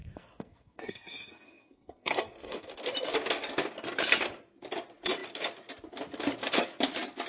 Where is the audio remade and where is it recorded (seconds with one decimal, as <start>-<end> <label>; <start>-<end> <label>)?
0.0-2.7 remade; 2.7-7.3 recorded